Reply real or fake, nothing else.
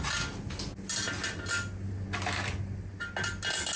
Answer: real